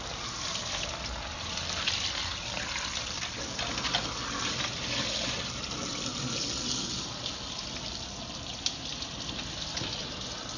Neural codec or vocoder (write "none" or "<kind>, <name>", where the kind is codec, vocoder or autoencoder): none